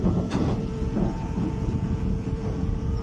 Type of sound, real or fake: fake